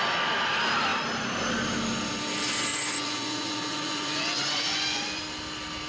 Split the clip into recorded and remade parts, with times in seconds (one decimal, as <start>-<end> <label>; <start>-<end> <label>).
0.0-2.7 recorded; 2.7-5.2 remade; 5.2-5.9 recorded